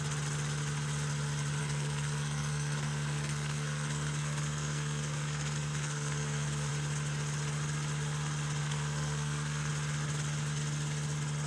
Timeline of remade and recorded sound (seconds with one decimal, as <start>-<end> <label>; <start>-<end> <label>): 0.0-1.6 recorded; 1.6-6.7 remade; 6.7-8.6 recorded; 8.6-9.7 remade; 9.7-11.5 recorded

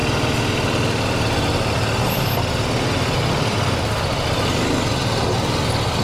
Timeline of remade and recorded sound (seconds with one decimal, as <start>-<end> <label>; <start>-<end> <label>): 0.0-6.0 recorded